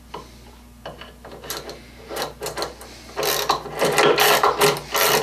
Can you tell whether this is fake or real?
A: real